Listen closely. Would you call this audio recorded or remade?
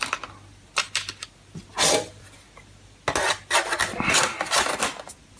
recorded